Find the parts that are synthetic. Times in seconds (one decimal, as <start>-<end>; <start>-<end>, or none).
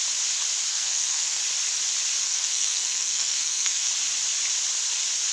0.7-1.4; 2.2-3.9